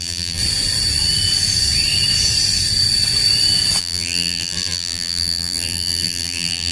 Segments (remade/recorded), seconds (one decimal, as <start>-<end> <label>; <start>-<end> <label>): 0.0-0.4 remade; 0.4-3.8 recorded; 3.8-6.7 remade